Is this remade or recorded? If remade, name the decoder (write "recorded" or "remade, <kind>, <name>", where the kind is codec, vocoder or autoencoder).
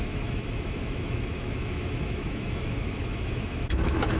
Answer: remade, autoencoder, DAC-VAE